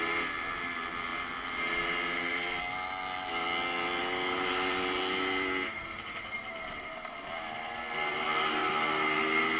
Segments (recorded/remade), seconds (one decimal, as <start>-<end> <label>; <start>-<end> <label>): 0.0-9.6 recorded